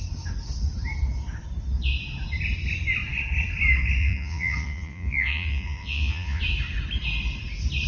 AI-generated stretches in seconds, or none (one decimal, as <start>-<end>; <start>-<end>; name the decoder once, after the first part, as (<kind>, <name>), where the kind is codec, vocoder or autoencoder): 4.0-6.4 (vocoder, Vocos)

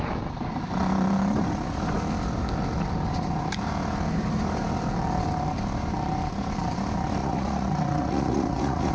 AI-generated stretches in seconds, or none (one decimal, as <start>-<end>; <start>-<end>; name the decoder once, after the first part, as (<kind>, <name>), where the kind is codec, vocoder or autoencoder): 7.2-8.9 (vocoder, Vocos)

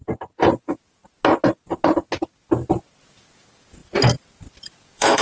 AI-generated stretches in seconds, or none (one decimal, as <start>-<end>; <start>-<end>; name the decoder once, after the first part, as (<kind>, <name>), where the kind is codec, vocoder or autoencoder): 0.5-1.0 (vocoder, Vocos); 3.0-3.8; 4.6-5.2

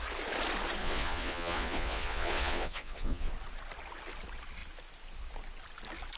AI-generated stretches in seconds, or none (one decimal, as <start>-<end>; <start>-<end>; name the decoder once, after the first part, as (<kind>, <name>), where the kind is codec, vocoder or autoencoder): 0.8-3.3 (vocoder, Vocos)

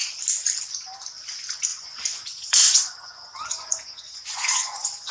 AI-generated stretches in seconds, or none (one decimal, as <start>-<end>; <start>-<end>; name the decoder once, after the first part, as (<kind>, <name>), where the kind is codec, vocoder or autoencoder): 1.7-5.1 (vocoder, Vocos)

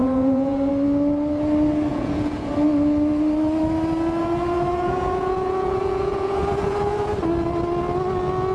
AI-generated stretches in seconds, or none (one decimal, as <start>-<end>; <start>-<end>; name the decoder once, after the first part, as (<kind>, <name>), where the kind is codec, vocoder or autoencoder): 0.0-0.7 (vocoder, Vocos); 1.9-2.5; 4.2-7.2